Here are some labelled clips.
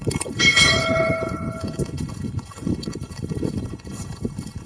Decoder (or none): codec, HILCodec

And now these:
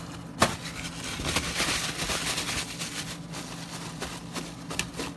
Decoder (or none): none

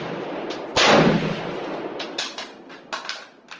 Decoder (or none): none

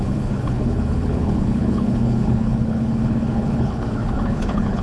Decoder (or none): codec, HILCodec